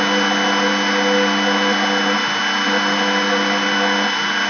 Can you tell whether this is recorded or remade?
recorded